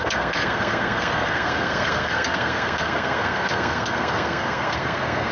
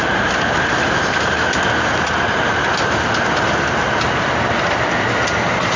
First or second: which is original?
second